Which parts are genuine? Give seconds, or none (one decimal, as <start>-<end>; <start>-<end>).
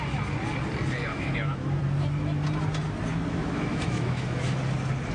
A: 0.0-1.1; 1.8-3.1; 4.6-5.1